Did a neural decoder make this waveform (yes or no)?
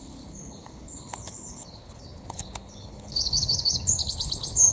yes